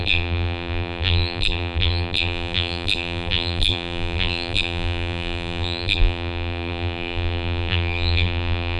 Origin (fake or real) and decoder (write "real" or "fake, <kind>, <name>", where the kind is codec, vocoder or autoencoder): fake, vocoder, BigVGAN v2